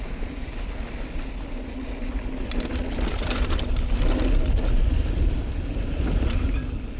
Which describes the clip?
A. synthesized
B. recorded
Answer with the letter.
B